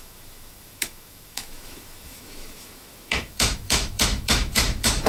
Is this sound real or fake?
fake